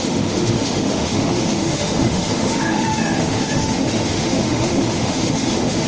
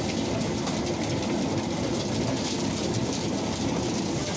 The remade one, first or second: first